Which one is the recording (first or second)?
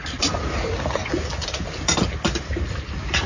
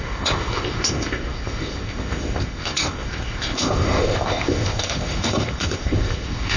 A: first